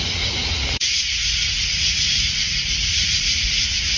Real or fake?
fake